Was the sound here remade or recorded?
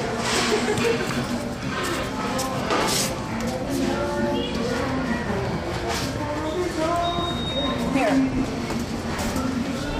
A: recorded